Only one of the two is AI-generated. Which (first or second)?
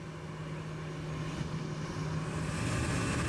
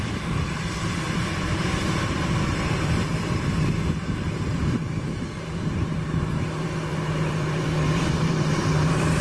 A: second